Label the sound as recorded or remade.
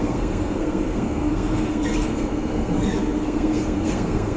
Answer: remade